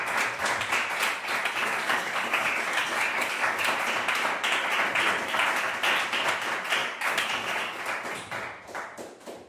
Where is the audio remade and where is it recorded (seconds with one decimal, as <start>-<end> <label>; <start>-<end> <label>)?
0.0-1.6 recorded; 1.6-3.6 remade; 3.6-6.8 recorded; 6.8-7.8 remade; 7.8-9.5 recorded